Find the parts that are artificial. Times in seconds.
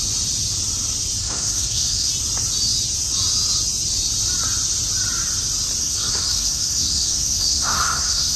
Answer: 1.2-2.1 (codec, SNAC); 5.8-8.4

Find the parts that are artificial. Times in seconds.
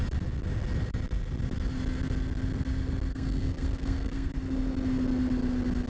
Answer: 3.1-4.3 (codec, SNAC)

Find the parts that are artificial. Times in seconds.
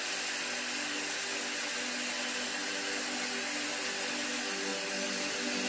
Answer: none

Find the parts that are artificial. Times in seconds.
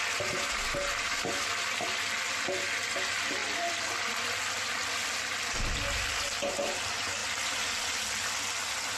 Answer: none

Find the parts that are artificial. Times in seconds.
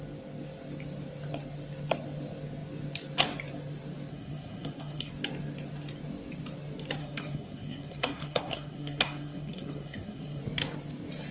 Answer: 4.1-5.1 (codec, SNAC); 7.0-10.4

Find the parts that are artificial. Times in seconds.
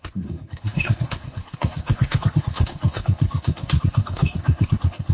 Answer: 0.0-5.1 (codec, SNAC)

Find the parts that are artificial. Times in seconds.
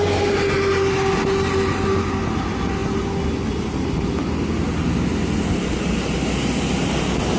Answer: none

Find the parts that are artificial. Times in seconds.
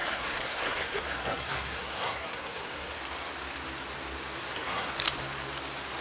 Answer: 0.0-3.0 (codec, SNAC); 4.4-4.9